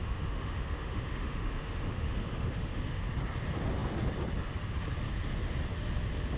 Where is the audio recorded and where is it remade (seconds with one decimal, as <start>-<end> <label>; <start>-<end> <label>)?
0.0-3.0 remade; 3.0-6.4 recorded